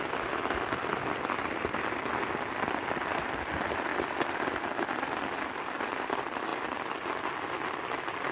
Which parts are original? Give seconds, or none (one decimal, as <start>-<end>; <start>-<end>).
0.0-8.3